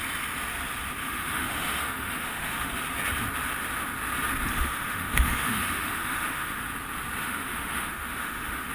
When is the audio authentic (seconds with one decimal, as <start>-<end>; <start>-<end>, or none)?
0.0-1.0; 2.7-4.5; 6.6-7.2